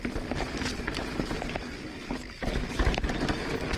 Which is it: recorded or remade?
recorded